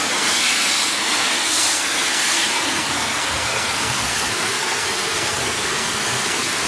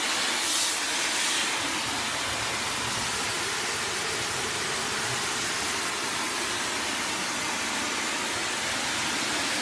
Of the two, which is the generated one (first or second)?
first